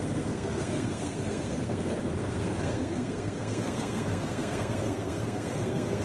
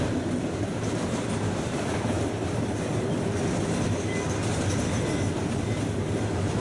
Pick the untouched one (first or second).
second